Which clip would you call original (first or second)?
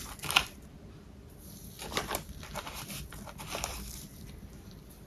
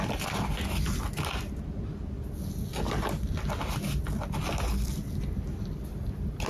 second